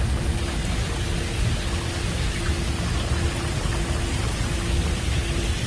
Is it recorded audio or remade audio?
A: recorded